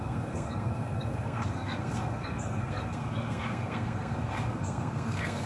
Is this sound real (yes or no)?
no